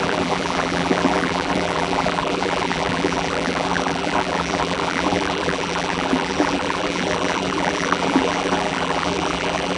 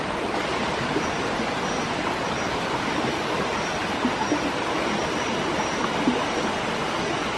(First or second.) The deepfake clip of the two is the first